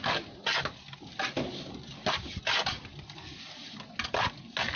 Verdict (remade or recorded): recorded